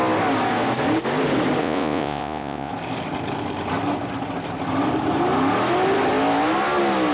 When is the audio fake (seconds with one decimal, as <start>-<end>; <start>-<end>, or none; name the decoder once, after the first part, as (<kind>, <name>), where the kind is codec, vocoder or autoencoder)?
1.6-2.7 (vocoder, Vocos)